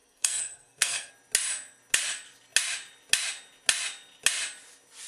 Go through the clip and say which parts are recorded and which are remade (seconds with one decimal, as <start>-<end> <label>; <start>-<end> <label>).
0.0-1.1 remade; 1.1-5.1 recorded